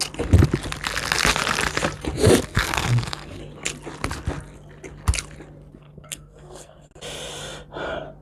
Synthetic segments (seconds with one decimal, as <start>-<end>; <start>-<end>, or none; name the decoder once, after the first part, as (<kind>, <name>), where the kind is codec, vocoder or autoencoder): 2.5-3.4 (codec, SNAC); 5.7-6.9